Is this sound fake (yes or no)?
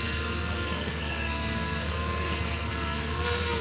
yes